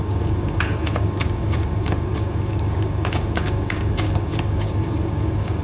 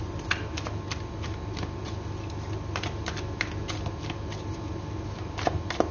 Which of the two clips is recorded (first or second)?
second